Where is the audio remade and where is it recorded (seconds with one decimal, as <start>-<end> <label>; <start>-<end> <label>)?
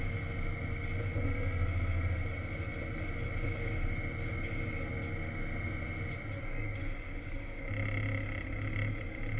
0.0-6.8 recorded; 6.8-7.6 remade; 7.6-9.4 recorded